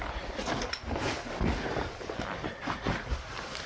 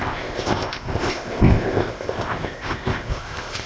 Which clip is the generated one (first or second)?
second